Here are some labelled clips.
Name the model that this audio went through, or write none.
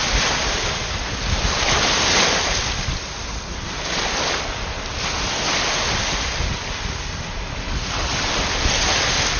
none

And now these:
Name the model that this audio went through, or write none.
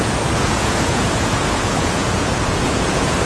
vocoder, Vocos